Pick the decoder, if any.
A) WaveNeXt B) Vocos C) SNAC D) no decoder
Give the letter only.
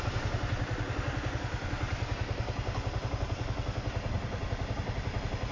D